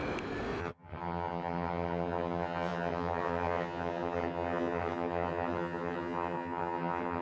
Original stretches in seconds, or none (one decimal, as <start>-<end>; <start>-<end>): 0.0-0.6